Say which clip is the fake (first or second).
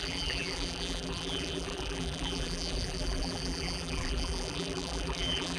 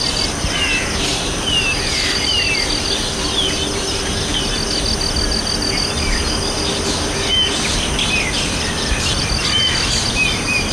first